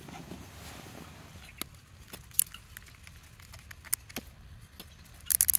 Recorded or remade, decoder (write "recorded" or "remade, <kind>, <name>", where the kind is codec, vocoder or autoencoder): recorded